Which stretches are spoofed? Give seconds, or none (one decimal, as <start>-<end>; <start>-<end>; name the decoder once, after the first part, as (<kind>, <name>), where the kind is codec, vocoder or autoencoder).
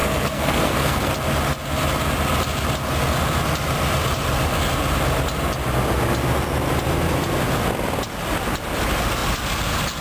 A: 0.0-1.1 (codec, SNAC)